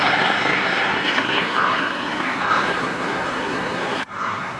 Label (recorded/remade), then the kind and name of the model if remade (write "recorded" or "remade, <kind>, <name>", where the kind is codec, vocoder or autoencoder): remade, codec, SNAC